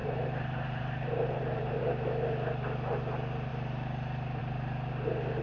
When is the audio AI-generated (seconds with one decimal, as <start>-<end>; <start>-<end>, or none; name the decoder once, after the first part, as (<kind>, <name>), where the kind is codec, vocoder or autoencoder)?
0.0-1.8 (vocoder, BigVGAN v2)